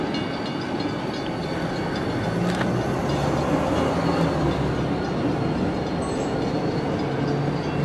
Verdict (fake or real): real